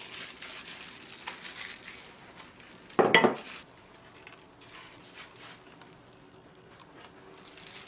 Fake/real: real